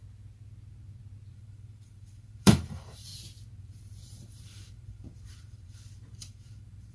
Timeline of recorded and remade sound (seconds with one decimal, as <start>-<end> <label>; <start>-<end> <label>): 0.0-1.3 recorded; 1.3-3.1 remade; 3.1-3.6 recorded; 3.6-6.9 remade